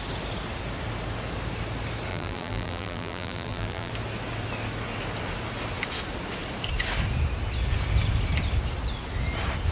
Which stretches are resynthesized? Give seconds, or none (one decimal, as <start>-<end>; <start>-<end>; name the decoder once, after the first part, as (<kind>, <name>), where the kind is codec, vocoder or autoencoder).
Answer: 2.1-3.9 (vocoder, BigVGAN v2)